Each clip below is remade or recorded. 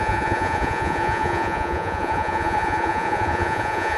remade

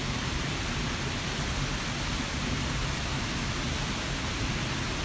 recorded